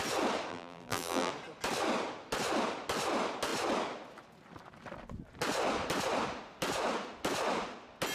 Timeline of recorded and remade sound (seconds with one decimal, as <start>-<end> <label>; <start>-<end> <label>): 0.0-0.5 recorded; 0.5-1.3 remade; 1.3-8.1 recorded